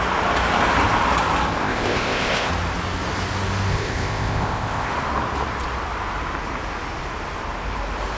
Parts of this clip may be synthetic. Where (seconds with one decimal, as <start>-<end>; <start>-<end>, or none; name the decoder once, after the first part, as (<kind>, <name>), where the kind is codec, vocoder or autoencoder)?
1.6-2.5 (codec, ZipCodec); 3.7-4.9

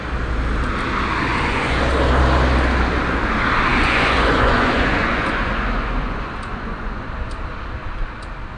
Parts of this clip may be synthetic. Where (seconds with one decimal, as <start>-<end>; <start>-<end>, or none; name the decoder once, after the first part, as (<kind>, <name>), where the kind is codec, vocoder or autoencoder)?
1.3-1.8 (vocoder, Vocos); 3.7-7.1